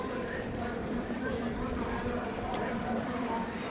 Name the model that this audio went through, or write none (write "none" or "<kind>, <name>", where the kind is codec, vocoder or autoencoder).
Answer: vocoder, BigVGAN v2